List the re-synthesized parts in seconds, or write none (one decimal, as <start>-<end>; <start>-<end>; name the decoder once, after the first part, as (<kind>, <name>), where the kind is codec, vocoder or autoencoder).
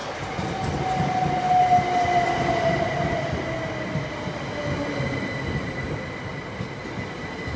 none